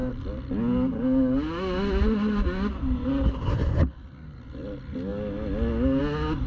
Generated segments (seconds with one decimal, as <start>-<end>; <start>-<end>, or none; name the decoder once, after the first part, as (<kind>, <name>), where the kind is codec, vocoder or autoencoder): none